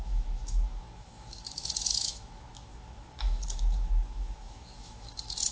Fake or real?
fake